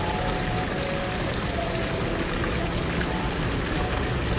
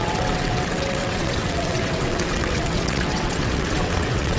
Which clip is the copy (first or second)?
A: second